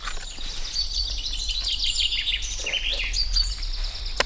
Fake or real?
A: real